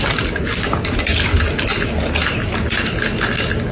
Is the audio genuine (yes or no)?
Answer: yes